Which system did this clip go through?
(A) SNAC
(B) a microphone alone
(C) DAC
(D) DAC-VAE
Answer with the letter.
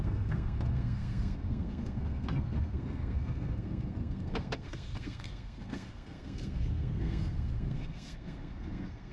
A